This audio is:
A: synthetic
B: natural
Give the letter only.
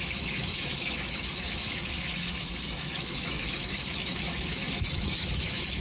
A